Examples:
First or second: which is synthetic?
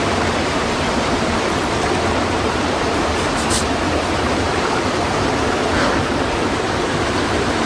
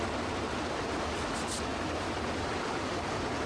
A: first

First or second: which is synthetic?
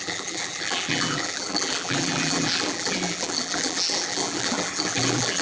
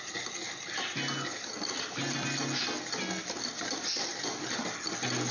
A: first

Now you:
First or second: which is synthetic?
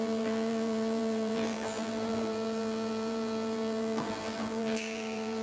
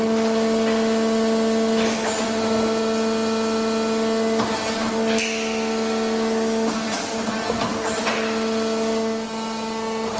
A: first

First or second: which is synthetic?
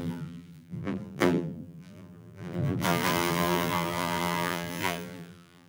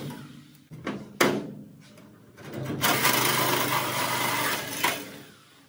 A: first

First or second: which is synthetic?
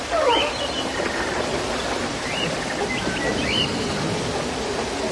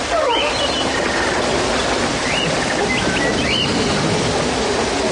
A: first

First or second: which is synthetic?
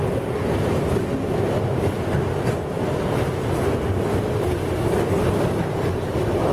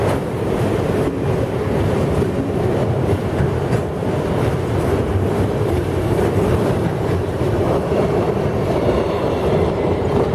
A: second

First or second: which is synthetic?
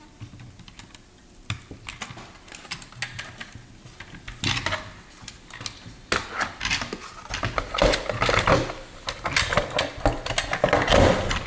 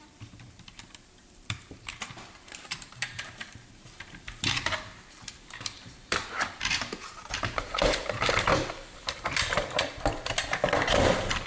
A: second